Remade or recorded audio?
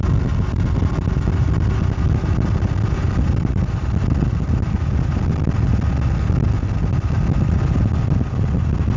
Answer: recorded